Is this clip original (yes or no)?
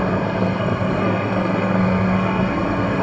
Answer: no